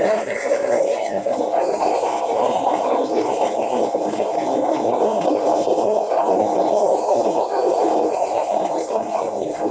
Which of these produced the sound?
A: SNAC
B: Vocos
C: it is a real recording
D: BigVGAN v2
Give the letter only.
A